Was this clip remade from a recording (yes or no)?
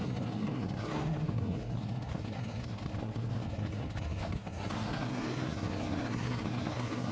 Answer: yes